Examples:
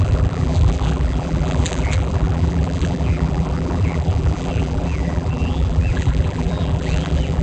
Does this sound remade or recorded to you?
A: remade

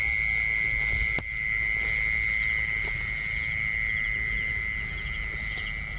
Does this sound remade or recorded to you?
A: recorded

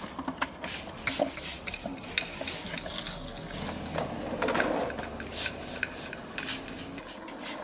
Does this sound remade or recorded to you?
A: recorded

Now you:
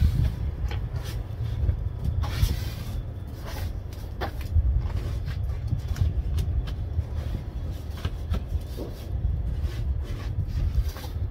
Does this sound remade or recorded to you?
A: recorded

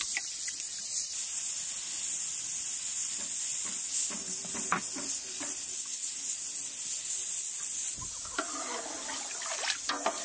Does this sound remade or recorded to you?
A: recorded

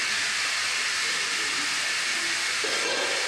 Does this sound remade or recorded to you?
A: recorded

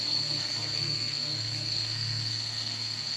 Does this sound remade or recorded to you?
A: remade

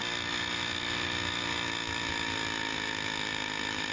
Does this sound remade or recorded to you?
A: recorded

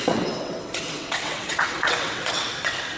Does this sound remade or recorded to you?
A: remade